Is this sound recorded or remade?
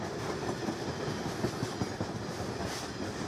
recorded